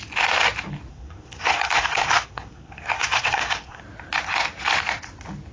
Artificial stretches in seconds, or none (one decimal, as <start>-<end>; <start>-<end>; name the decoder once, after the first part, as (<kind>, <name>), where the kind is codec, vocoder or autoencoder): 0.9-3.8 (codec, SNAC)